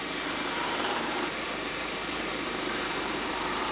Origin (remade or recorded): remade